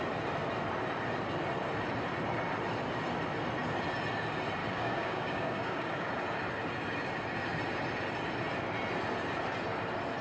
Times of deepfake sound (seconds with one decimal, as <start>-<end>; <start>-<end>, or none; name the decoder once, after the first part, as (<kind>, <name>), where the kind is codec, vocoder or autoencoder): 4.6-6.1 (codec, DAC)